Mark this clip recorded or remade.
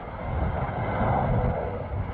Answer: recorded